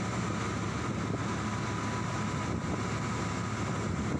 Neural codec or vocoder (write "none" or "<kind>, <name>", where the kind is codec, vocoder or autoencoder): none